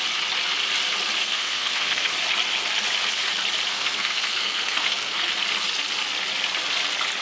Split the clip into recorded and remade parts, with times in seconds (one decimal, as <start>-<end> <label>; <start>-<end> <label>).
0.0-1.2 recorded; 1.2-2.1 remade; 2.1-3.7 recorded; 3.7-5.3 remade; 5.3-7.2 recorded